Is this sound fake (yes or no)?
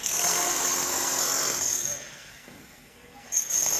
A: yes